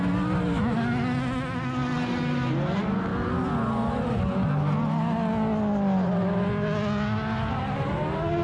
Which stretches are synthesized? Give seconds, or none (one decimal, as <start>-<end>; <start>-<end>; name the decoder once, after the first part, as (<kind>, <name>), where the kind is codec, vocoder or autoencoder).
none